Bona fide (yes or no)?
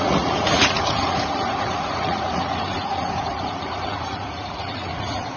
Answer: no